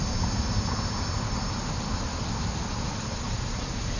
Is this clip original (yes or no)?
yes